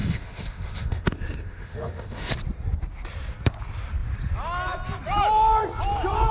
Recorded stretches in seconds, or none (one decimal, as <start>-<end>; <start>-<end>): 2.3-6.3